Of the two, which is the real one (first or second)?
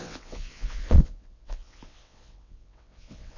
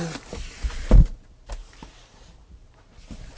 second